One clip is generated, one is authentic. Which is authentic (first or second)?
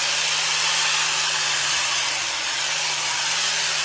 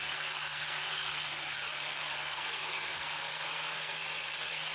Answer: first